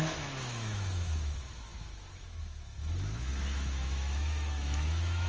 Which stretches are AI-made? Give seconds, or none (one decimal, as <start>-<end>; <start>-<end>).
0.0-5.3